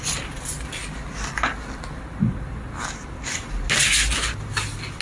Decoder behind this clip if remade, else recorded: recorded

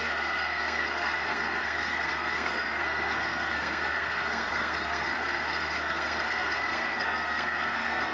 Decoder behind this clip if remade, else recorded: remade, codec, SNAC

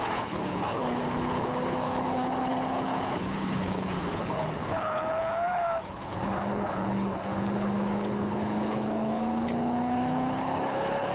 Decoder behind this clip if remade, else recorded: remade, codec, HILCodec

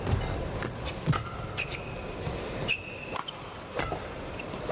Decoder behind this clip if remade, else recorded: recorded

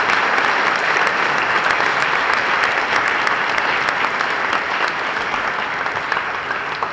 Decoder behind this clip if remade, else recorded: recorded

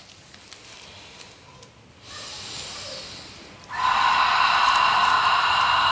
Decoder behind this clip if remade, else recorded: recorded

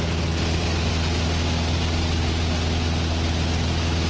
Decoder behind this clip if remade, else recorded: recorded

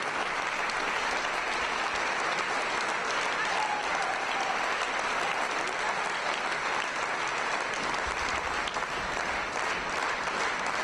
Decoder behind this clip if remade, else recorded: recorded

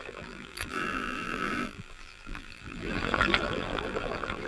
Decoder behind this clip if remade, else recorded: remade, vocoder, BigVGAN v2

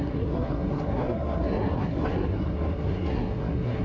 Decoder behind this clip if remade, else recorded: remade, codec, SNAC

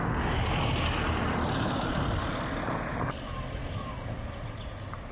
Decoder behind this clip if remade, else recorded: recorded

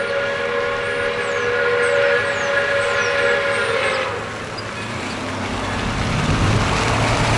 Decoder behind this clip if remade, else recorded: recorded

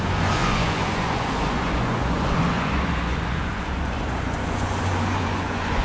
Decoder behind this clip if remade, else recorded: remade, vocoder, Vocos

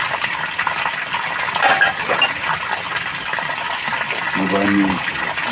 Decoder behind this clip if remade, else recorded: recorded